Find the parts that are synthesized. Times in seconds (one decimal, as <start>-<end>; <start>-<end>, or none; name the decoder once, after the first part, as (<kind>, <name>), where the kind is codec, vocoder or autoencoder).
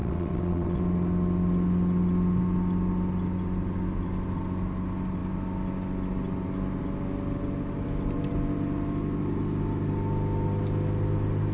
0.0-0.8 (vocoder, WaveNeXt)